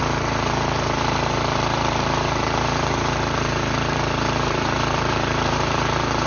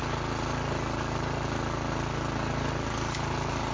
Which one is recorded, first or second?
second